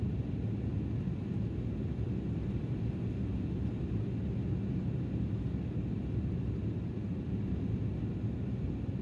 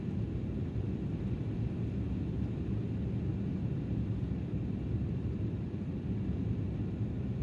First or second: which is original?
first